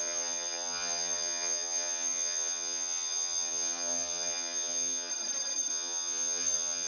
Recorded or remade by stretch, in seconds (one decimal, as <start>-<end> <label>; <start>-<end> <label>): 0.0-5.1 remade; 5.1-5.7 recorded; 5.7-6.9 remade